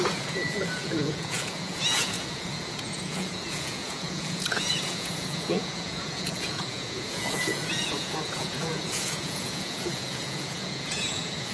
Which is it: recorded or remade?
remade